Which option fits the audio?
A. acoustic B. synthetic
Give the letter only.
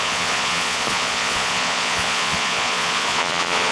B